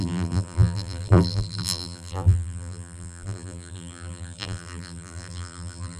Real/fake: fake